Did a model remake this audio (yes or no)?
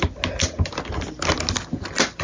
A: no